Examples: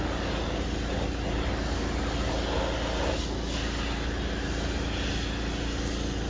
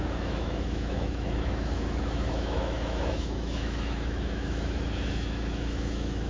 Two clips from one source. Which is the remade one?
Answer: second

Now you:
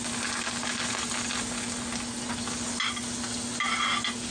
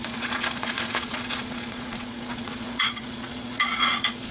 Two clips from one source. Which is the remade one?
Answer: second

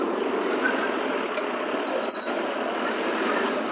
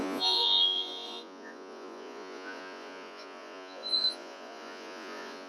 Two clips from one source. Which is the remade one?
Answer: second